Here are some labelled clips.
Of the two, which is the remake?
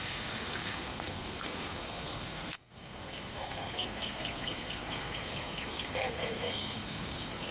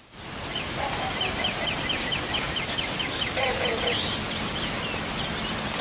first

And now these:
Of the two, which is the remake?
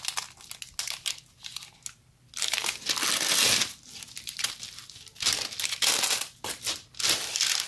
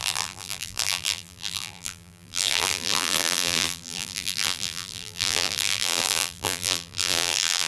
second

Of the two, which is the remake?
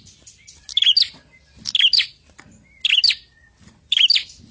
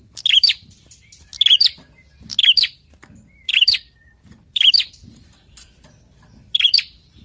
second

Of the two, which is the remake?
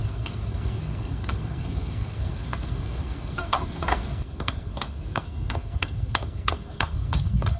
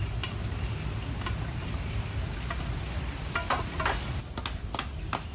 first